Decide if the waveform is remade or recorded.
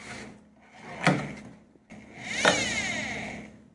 recorded